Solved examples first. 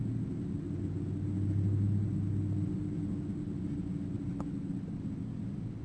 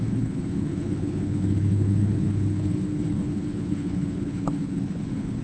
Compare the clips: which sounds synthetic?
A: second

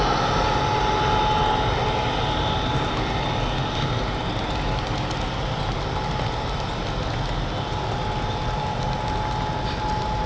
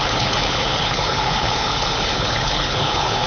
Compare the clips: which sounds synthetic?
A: second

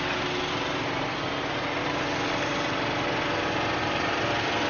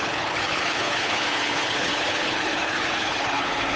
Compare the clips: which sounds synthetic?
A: second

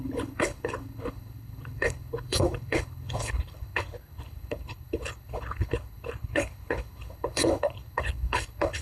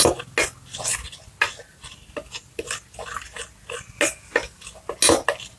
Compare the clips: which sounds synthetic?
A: first